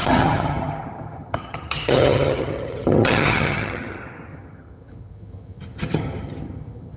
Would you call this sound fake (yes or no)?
yes